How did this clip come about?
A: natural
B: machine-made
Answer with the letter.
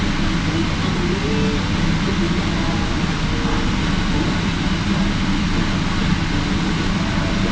A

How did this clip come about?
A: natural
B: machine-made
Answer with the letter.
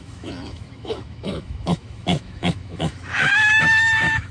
B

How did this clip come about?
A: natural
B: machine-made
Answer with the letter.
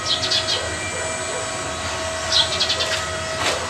A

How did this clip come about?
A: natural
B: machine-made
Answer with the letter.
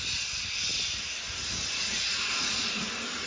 A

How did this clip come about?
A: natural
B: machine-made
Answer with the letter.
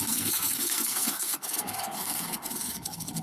B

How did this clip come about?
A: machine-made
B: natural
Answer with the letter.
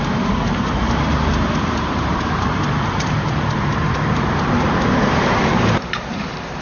A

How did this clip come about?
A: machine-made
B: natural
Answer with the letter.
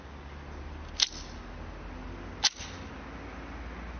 B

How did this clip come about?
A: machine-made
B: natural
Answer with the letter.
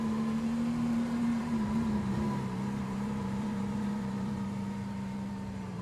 A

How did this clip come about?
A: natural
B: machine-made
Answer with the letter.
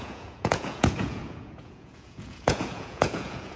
B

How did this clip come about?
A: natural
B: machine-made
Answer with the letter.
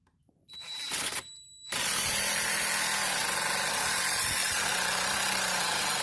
A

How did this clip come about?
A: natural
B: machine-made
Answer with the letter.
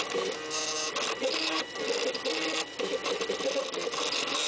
A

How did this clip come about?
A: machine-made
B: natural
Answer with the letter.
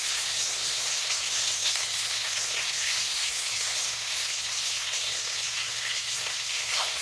A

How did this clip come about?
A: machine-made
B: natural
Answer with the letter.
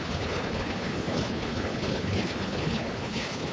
A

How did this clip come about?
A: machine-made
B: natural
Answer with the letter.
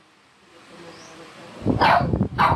B